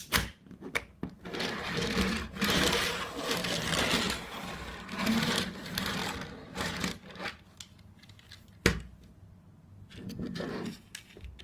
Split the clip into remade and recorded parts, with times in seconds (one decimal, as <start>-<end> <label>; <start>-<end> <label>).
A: 0.0-3.4 remade; 3.4-4.0 recorded; 4.0-6.0 remade; 6.0-6.5 recorded; 6.5-7.0 remade; 7.0-10.0 recorded; 10.0-11.4 remade